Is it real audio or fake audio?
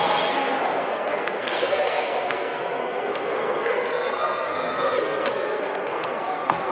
fake